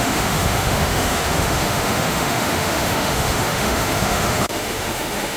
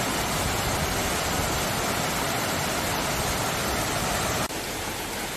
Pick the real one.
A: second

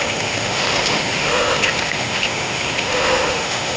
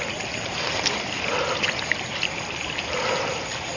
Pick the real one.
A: second